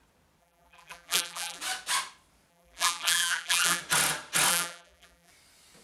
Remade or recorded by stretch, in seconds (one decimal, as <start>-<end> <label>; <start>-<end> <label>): 0.0-0.4 recorded; 0.4-1.6 remade; 1.6-2.5 recorded; 2.5-3.8 remade; 3.8-4.5 recorded; 4.5-5.3 remade; 5.3-5.8 recorded